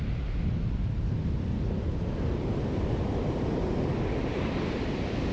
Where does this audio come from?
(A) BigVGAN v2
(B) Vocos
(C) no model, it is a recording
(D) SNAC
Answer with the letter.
C